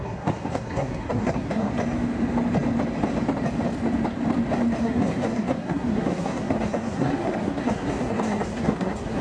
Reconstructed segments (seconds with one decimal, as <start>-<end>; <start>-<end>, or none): 0.0-1.7; 4.8-9.2